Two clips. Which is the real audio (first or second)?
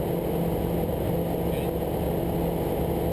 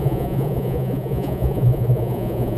first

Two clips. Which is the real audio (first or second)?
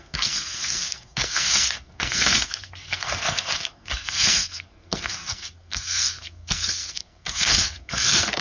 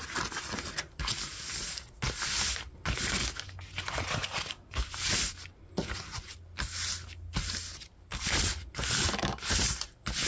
second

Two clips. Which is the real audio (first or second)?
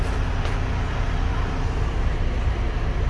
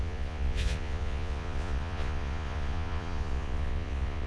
first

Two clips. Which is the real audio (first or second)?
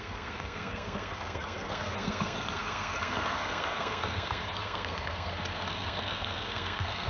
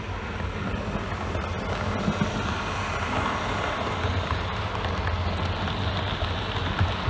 second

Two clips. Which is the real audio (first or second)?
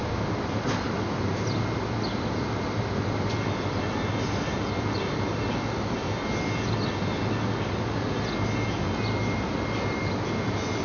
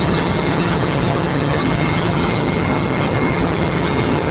first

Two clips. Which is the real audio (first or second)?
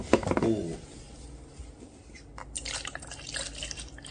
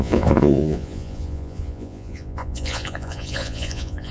first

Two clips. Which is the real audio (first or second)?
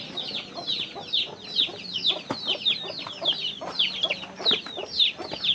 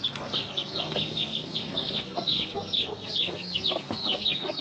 first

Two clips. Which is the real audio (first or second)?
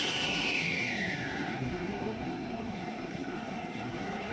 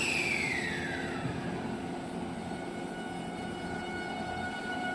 second